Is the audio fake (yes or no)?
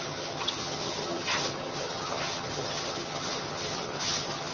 yes